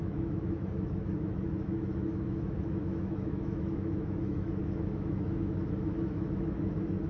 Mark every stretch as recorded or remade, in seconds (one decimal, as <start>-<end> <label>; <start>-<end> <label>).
0.0-7.1 remade